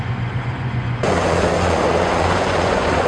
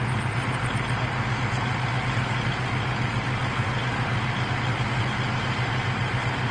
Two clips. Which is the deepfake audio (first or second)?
first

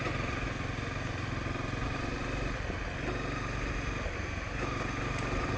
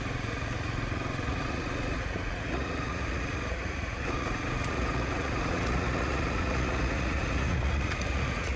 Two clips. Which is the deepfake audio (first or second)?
second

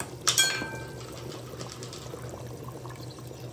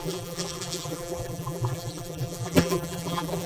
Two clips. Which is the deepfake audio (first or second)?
second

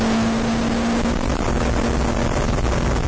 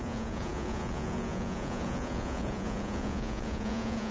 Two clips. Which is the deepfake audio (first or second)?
second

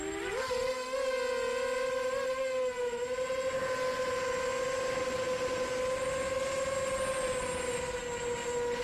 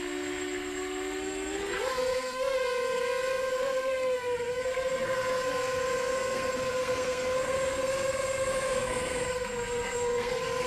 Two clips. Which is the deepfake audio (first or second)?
second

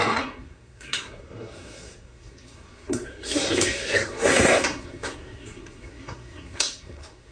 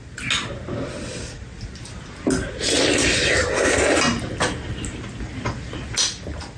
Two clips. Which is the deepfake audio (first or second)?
first